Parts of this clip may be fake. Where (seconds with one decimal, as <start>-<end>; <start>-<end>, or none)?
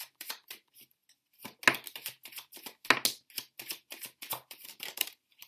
0.0-1.0; 4.3-5.5